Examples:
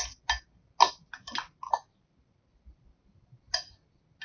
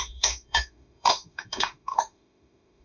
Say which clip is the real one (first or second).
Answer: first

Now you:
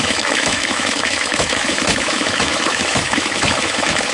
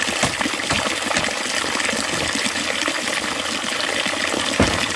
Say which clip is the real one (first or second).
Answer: second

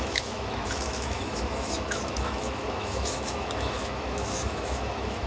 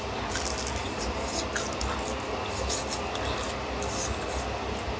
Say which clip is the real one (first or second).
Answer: second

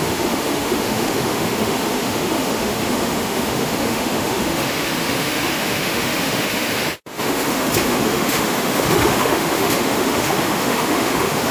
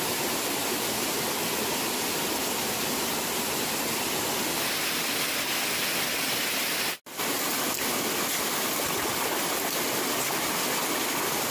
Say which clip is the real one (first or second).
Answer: second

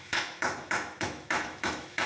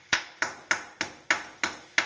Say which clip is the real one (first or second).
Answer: second